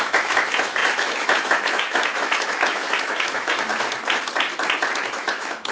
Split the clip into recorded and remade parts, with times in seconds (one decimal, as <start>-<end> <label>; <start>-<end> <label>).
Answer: 0.0-3.7 remade; 3.7-5.1 recorded; 5.1-5.7 remade